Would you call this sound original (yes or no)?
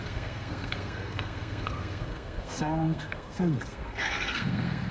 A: no